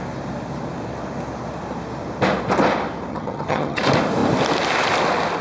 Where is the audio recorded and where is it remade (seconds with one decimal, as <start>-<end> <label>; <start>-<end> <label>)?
0.0-3.1 recorded; 3.1-3.8 remade; 3.8-5.4 recorded